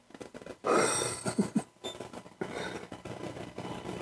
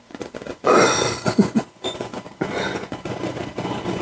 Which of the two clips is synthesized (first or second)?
second